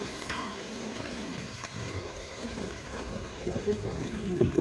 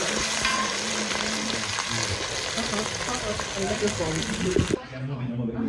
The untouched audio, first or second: second